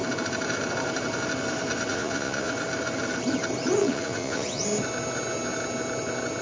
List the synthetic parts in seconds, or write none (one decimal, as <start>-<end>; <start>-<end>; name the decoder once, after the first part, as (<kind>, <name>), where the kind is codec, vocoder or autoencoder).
1.9-2.5 (vocoder, Vocos); 3.8-4.6